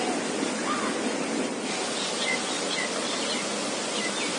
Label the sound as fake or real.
real